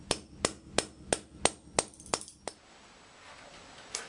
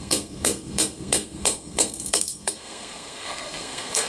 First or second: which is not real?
second